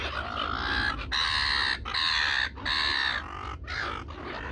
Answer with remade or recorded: recorded